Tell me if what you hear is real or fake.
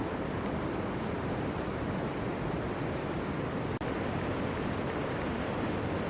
fake